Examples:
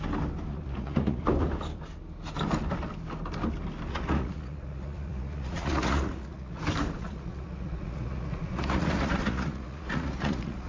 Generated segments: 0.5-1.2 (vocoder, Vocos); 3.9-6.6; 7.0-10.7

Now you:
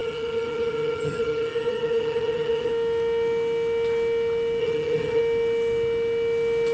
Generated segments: 0.0-2.7 (vocoder, HiFi-GAN); 4.6-5.2

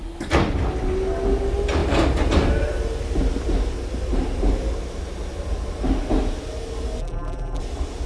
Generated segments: 7.0-7.6 (vocoder, BigVGAN v2)

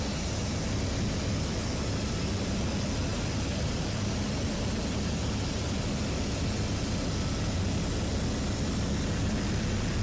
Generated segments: none

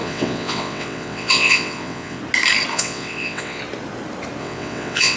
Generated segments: 0.0-2.2 (vocoder, WaveNeXt); 2.7-3.6; 4.4-5.2

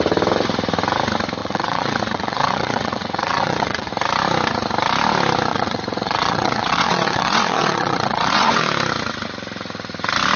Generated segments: 1.4-3.9 (vocoder, WaveNeXt); 5.5-8.6

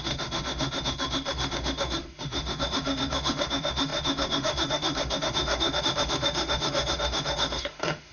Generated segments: 0.0-8.1 (autoencoder, DAC-VAE)